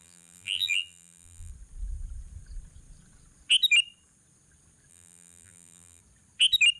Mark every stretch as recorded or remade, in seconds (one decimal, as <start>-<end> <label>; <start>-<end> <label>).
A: 0.0-1.5 remade; 1.5-4.9 recorded; 4.9-6.0 remade; 6.0-6.8 recorded